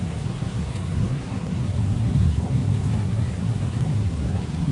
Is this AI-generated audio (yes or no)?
yes